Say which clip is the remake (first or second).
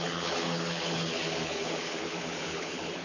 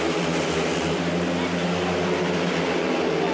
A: first